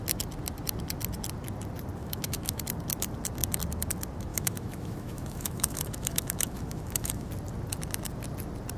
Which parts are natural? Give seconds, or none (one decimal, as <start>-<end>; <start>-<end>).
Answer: 0.0-2.0; 2.6-4.3; 7.3-8.8